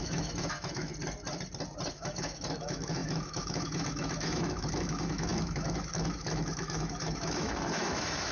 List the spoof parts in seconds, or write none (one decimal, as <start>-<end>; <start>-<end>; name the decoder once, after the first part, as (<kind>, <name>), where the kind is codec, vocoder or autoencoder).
0.0-0.9 (autoencoder, DAC-VAE); 1.9-8.3